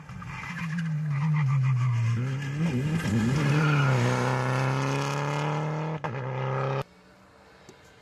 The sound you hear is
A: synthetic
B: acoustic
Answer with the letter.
B